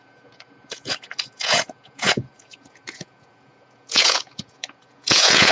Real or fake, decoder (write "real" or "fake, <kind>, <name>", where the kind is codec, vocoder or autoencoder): fake, vocoder, Vocos